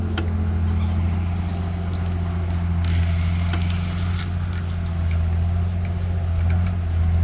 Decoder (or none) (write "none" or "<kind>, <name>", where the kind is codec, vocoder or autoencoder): none